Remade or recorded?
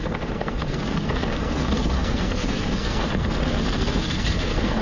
remade